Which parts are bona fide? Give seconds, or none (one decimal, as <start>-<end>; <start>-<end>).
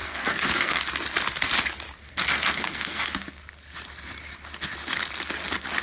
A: 0.8-2.0; 3.4-5.8